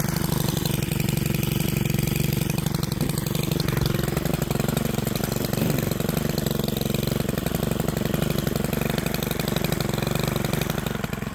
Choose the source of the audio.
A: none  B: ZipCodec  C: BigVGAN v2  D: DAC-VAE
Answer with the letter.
A